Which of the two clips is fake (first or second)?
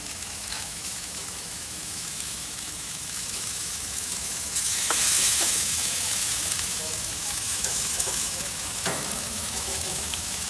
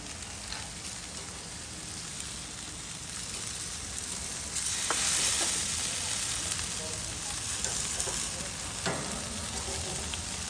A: first